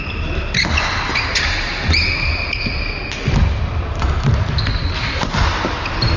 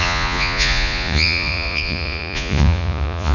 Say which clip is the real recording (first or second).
first